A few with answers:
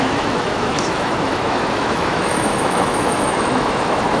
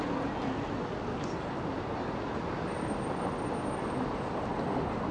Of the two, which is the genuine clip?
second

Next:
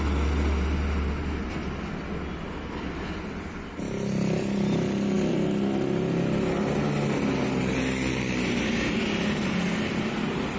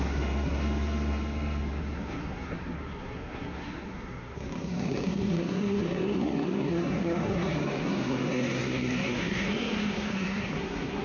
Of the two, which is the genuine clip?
first